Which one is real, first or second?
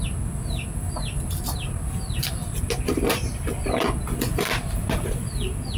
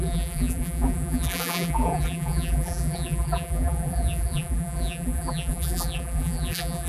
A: first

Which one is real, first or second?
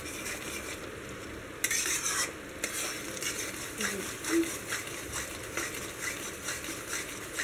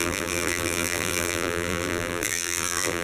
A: first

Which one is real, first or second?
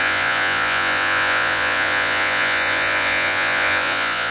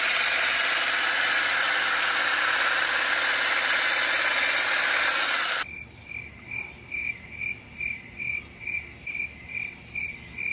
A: second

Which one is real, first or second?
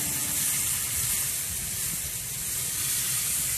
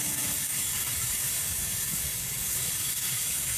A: first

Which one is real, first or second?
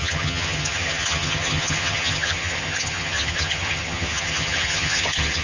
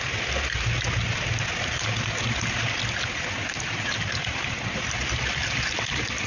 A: second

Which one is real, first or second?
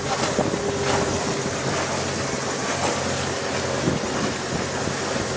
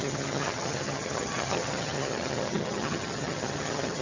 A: first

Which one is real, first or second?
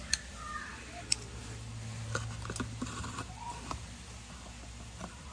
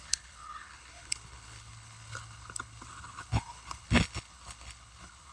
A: first